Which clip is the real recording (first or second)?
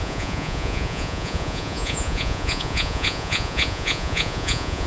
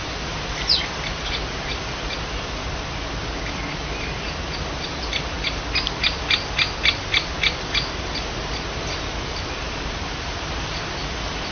second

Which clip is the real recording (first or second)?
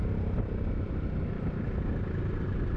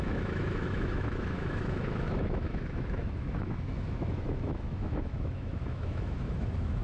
first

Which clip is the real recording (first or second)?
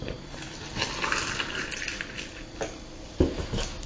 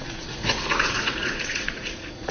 first